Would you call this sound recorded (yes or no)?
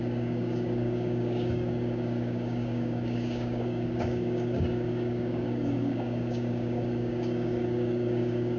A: no